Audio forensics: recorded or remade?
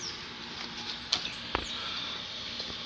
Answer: recorded